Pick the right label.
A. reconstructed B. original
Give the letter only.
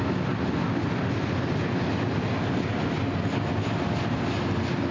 B